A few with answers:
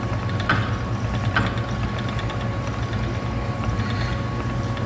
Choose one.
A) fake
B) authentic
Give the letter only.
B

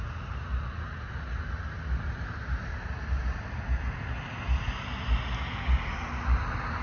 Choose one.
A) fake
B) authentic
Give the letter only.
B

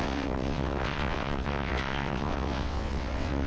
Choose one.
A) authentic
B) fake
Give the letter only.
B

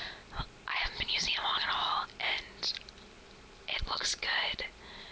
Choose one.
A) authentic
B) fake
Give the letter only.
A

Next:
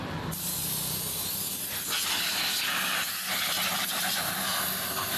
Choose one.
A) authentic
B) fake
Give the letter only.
A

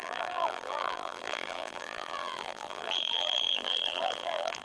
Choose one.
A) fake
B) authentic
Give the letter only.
A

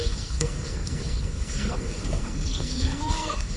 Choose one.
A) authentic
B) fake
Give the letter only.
B